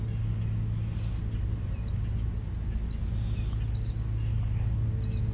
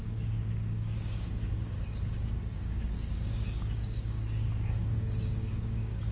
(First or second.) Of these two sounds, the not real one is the second